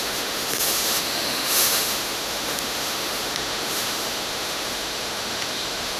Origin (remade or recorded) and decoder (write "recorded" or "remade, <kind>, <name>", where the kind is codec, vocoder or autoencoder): remade, autoencoder, DAC-VAE